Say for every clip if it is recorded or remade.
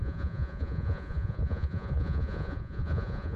remade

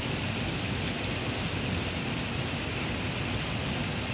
recorded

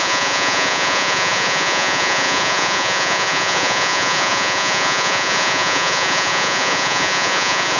remade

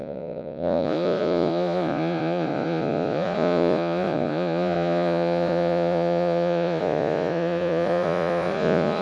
remade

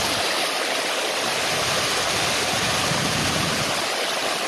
recorded